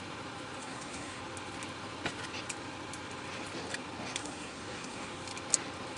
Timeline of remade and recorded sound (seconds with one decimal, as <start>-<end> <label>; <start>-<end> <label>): 0.0-0.6 recorded; 0.6-1.2 remade; 1.2-4.2 recorded; 4.2-5.2 remade; 5.2-6.0 recorded